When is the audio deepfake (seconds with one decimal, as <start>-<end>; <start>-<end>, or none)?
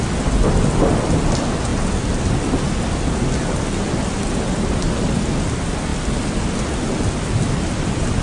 none